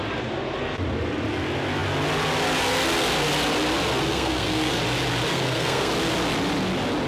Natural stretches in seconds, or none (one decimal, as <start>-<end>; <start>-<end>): 0.0-4.1; 4.8-5.3; 5.9-7.1